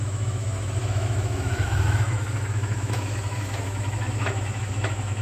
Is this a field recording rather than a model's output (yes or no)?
no